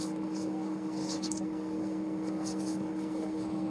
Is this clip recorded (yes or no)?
no